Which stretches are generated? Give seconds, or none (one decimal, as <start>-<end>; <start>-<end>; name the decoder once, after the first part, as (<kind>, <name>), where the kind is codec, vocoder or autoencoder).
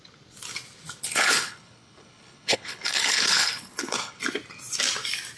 1.0-4.2 (codec, HILCodec)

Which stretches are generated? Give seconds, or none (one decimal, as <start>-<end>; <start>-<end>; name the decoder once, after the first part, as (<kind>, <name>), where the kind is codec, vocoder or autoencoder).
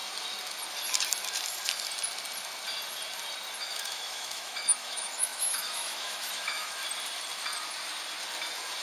3.6-6.8 (autoencoder, DAC-VAE)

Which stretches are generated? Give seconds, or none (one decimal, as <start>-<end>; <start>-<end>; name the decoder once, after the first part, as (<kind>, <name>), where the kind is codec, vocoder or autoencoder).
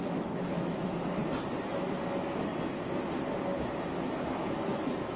0.0-1.2 (autoencoder, DAC-VAE); 1.7-2.5; 3.9-5.2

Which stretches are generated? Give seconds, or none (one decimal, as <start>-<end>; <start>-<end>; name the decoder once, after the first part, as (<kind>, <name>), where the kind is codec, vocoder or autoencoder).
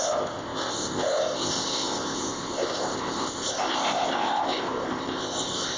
0.0-5.8 (codec, ZipCodec)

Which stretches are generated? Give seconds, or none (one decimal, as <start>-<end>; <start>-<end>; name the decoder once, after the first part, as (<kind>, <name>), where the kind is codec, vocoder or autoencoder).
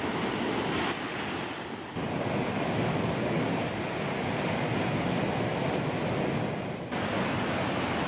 3.2-3.7 (codec, DAC)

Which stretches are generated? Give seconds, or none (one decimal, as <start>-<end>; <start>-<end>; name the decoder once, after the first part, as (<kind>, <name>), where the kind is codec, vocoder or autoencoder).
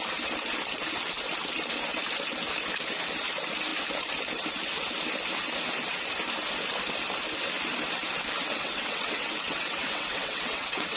8.4-11.0 (vocoder, WaveNeXt)